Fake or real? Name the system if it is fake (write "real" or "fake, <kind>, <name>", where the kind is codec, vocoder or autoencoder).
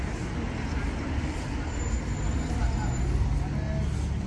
real